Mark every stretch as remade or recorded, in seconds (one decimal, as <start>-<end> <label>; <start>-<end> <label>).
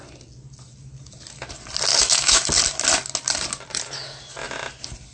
0.0-1.9 recorded; 1.9-2.5 remade; 2.5-5.1 recorded